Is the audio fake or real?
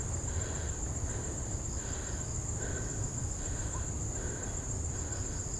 real